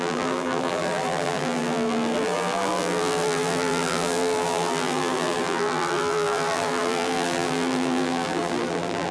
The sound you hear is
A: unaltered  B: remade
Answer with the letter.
B